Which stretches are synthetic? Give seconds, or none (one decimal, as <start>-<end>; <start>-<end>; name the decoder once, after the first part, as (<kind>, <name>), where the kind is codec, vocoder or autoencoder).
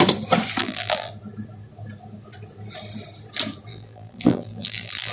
0.6-1.1 (vocoder, BigVGAN v2); 3.7-5.1